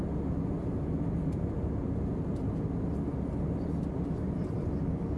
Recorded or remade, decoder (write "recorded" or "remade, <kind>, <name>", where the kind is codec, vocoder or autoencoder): recorded